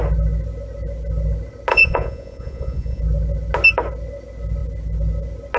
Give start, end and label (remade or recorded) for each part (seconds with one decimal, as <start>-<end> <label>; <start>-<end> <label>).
0.0-1.7 recorded; 1.7-3.0 remade; 3.0-5.6 recorded

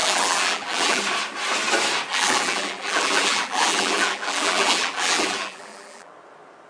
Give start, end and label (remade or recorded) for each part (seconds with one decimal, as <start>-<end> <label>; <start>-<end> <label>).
0.0-1.0 remade; 1.0-2.1 recorded; 2.1-6.1 remade; 6.1-6.7 recorded